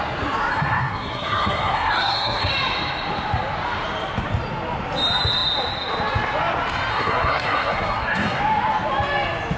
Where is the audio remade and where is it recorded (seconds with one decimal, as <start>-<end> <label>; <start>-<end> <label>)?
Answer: 0.0-0.5 recorded; 0.5-2.5 remade; 2.5-6.9 recorded; 6.9-8.4 remade; 8.4-9.6 recorded